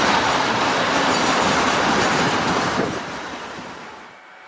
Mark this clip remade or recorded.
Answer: remade